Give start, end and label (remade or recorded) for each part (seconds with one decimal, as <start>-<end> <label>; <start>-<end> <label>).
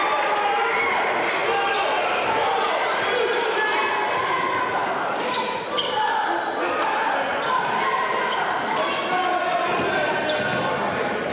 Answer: 0.0-11.3 recorded